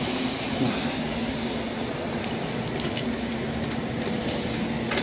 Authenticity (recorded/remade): recorded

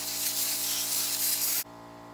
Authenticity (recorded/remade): recorded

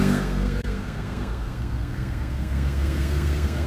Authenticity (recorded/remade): remade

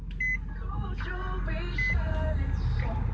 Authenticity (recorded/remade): recorded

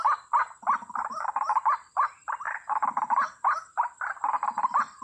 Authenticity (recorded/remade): recorded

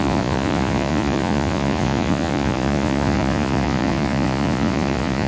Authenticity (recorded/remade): remade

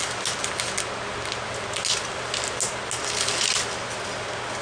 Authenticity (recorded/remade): recorded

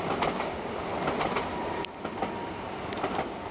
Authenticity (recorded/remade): remade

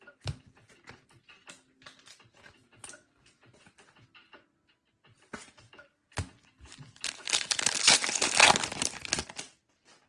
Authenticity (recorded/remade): recorded